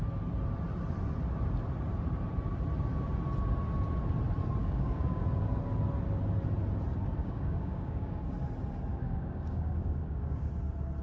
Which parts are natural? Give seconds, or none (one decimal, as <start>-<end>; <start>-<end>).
0.0-4.6; 5.2-7.2; 8.2-8.9; 10.5-11.0